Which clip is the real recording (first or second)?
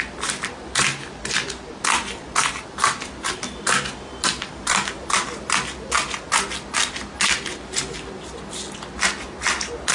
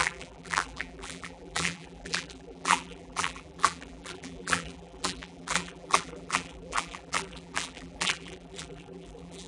first